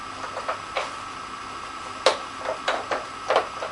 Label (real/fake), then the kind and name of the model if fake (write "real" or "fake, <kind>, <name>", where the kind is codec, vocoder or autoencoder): real